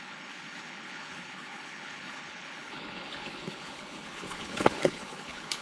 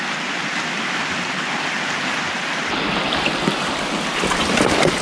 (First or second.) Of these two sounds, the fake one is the first